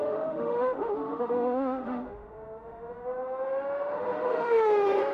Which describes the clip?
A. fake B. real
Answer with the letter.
A